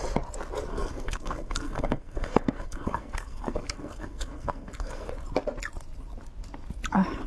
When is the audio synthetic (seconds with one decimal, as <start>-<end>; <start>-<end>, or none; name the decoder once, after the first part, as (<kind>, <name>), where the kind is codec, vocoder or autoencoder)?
0.7-5.1 (codec, SNAC)